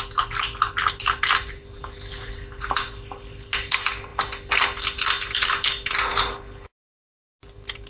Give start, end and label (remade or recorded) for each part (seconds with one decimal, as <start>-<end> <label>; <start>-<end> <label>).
0.0-7.9 recorded